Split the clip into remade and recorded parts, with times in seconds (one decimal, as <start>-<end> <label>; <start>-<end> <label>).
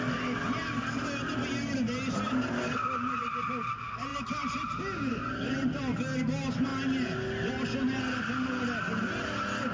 0.0-9.7 recorded